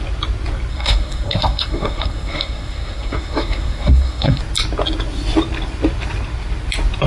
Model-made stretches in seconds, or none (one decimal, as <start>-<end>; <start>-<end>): 0.7-4.4